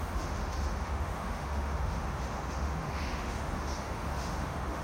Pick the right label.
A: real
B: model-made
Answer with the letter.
B